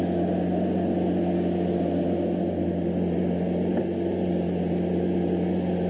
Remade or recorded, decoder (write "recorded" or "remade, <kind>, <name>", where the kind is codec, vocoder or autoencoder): recorded